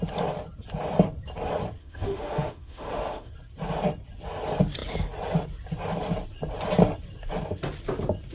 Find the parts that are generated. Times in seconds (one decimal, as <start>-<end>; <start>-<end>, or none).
1.8-3.3